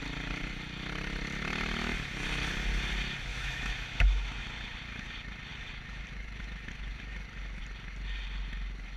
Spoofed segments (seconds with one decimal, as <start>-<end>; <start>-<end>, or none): 3.3-4.4